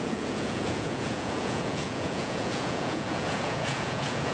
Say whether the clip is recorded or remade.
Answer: remade